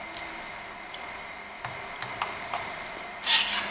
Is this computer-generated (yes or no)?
no